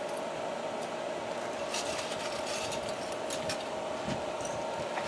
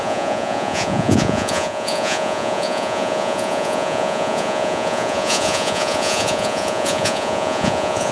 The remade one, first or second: second